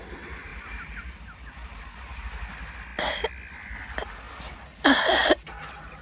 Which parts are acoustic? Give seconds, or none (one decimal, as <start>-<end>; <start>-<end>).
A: 0.0-6.0